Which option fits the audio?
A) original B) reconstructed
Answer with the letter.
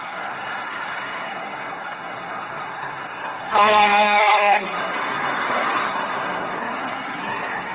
B